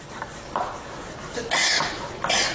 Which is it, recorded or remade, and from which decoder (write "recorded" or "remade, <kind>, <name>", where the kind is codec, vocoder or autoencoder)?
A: recorded